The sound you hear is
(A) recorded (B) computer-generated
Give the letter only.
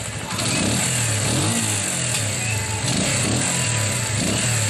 A